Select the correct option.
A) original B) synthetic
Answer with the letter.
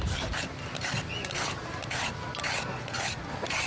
A